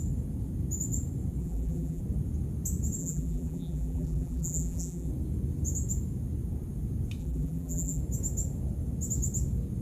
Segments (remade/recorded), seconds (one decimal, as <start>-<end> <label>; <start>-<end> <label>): 0.0-1.4 recorded; 1.4-2.0 remade; 2.0-3.0 recorded; 3.0-5.1 remade; 5.1-7.2 recorded; 7.2-8.0 remade; 8.0-9.8 recorded